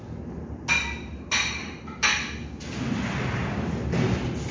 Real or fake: real